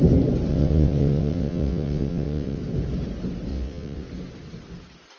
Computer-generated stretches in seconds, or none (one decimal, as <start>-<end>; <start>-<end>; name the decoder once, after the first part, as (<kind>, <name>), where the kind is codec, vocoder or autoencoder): 0.5-2.6 (vocoder, WaveNeXt); 3.5-4.1